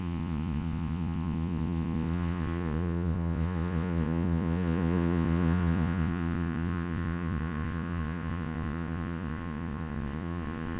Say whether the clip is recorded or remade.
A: remade